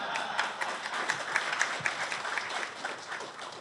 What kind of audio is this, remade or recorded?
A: recorded